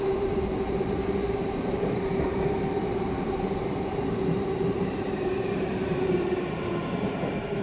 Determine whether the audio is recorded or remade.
remade